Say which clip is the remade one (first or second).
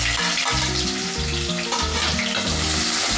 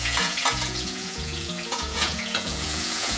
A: second